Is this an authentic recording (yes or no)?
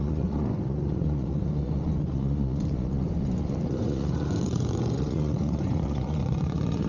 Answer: no